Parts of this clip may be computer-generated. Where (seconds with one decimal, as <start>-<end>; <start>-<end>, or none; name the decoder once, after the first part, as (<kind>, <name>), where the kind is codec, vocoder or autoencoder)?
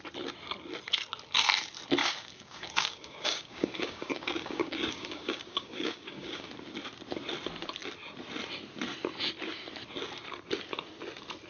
2.0-6.5 (codec, DAC)